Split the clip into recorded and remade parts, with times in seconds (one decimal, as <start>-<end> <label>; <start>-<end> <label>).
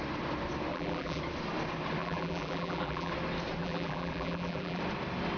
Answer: 0.0-0.7 recorded; 0.7-1.2 remade; 1.2-2.0 recorded; 2.0-3.1 remade; 3.1-3.6 recorded; 3.6-4.8 remade; 4.8-5.4 recorded